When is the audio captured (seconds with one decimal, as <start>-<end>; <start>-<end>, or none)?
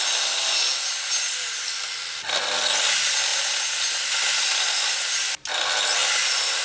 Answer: 0.0-3.3; 5.4-6.6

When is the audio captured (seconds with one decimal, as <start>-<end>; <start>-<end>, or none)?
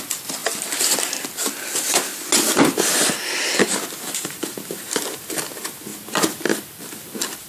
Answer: 0.4-4.1